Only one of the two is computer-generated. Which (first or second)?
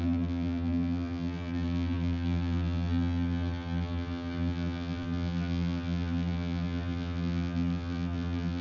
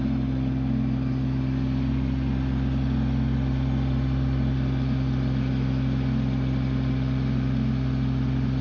first